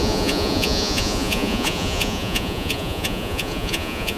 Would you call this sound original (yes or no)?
no